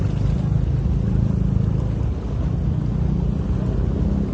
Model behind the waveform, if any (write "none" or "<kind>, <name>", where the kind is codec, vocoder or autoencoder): none